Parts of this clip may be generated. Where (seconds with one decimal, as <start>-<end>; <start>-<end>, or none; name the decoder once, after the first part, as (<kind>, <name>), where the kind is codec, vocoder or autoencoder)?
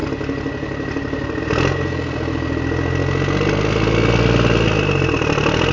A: none